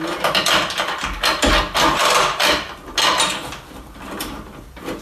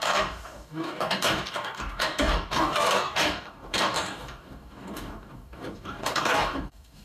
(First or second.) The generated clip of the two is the second